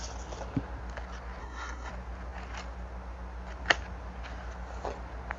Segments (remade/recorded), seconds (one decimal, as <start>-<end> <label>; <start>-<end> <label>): 0.0-1.4 recorded; 1.4-1.9 remade; 1.9-5.4 recorded